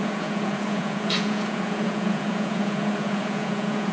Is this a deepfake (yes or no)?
yes